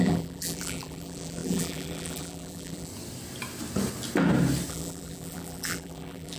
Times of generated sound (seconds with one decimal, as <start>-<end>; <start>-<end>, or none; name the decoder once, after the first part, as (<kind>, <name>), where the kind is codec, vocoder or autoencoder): 0.0-2.9 (vocoder, BigVGAN v2); 4.7-6.4